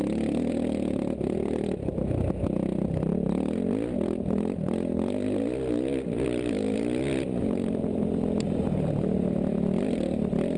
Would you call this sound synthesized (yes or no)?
yes